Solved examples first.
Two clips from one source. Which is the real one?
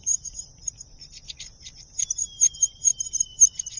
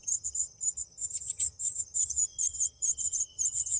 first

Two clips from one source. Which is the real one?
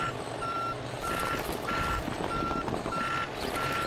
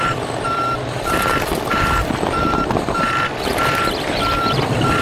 first